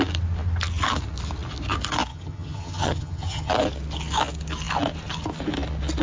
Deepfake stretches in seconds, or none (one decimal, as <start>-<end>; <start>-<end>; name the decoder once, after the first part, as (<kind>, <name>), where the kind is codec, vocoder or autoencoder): 2.1-3.5 (vocoder, HiFi-GAN)